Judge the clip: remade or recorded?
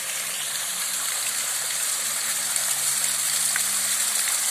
remade